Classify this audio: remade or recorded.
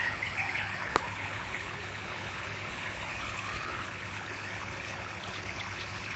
remade